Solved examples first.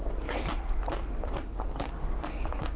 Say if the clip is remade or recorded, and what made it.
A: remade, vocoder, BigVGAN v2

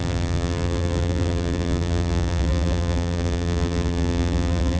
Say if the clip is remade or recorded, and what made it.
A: remade, vocoder, BigVGAN v2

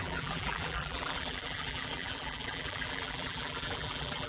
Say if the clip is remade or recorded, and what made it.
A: remade, vocoder, BigVGAN v2